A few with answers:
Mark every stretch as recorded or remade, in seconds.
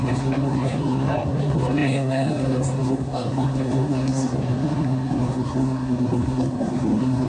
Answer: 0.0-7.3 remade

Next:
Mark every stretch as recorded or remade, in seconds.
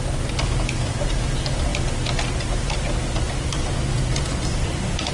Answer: 0.0-5.1 recorded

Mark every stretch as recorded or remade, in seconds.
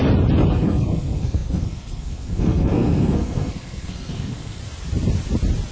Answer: 0.0-0.5 recorded; 0.5-4.6 remade; 4.6-5.7 recorded